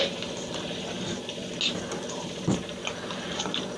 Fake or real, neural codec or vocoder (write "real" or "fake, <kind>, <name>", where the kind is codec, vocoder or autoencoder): real